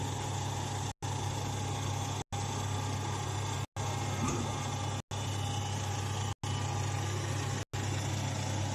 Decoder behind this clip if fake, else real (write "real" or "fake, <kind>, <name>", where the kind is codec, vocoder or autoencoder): real